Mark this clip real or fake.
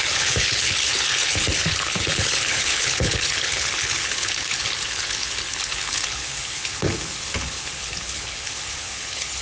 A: fake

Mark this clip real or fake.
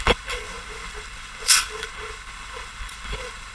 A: fake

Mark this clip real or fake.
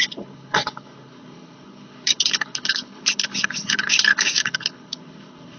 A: fake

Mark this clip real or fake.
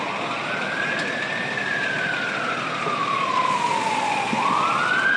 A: real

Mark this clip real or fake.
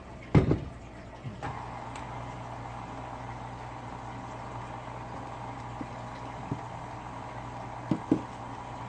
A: real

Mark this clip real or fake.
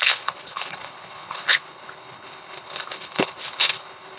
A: fake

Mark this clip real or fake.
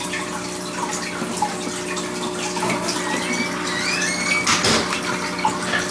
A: real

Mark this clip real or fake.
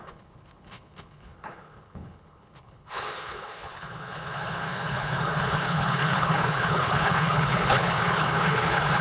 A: fake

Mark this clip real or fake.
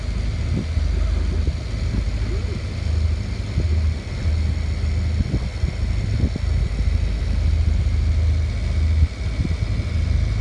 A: real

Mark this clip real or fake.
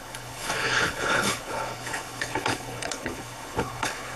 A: fake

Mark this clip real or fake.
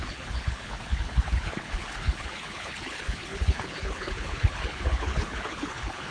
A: fake